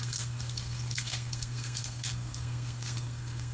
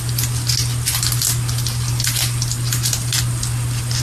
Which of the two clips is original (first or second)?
second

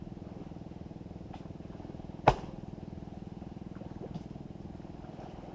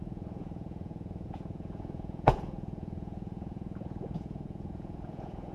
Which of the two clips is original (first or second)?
first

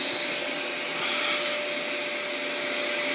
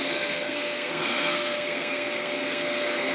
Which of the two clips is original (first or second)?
first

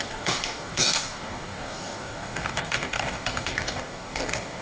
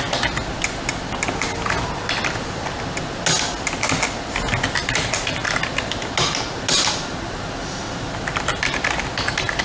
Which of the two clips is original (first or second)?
second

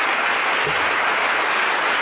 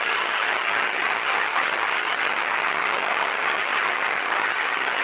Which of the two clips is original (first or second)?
first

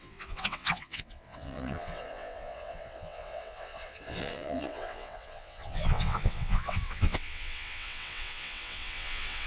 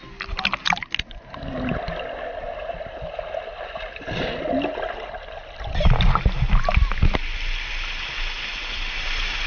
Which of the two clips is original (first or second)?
second